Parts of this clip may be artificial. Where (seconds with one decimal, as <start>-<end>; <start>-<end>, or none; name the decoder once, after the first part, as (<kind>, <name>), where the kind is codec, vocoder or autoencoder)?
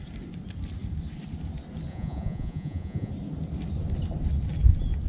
1.9-3.1 (vocoder, Vocos)